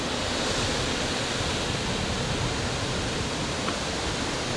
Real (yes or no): yes